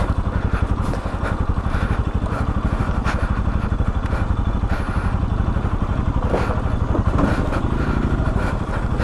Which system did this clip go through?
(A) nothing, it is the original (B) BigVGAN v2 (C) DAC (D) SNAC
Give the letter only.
A